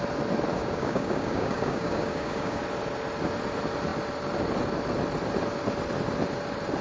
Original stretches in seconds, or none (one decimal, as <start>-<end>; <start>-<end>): 0.0-0.6; 2.6-6.8